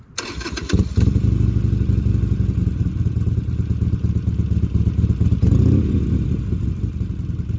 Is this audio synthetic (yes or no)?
no